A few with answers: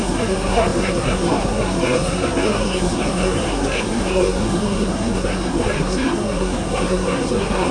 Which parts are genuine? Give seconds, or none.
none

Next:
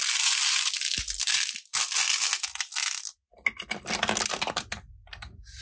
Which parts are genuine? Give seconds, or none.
0.0-5.6

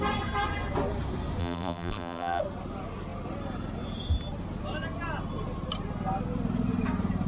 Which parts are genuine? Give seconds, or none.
0.0-1.4; 2.4-7.3

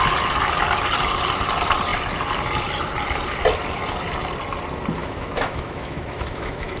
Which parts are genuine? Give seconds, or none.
0.0-5.0

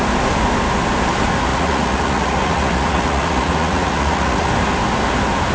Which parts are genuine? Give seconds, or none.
0.0-1.5; 4.5-5.5

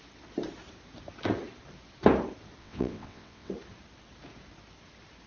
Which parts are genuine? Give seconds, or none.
0.0-2.6; 3.5-5.3

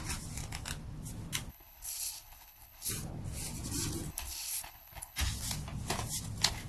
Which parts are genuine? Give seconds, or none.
0.0-1.5; 2.9-4.1; 5.2-6.7

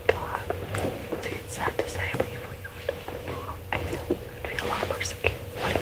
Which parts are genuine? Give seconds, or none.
0.0-1.0; 3.5-5.8